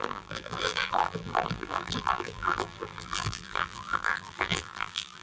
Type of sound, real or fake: fake